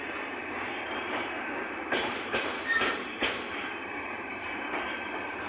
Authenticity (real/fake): fake